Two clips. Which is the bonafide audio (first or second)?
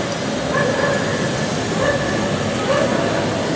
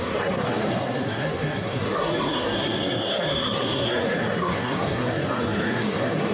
first